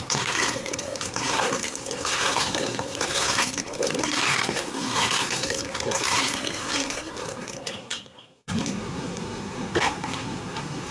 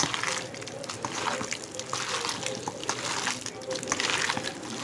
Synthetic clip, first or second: first